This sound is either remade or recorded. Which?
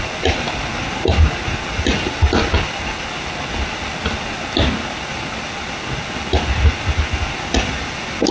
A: recorded